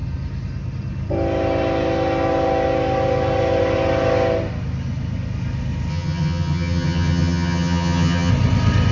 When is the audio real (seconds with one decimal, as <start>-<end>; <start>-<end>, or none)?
0.0-5.9; 8.3-8.9